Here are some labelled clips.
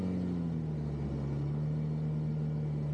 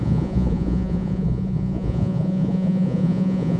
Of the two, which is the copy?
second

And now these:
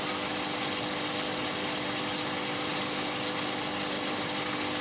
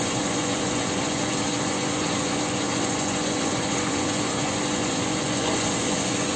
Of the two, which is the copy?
second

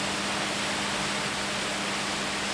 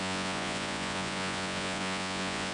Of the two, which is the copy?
second